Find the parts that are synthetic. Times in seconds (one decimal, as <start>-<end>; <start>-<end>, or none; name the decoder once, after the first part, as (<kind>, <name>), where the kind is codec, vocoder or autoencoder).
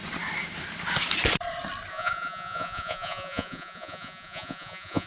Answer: 1.9-5.1 (vocoder, Vocos)